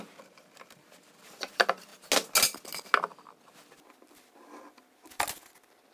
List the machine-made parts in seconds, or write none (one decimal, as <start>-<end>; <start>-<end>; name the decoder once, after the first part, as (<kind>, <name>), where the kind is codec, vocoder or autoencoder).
none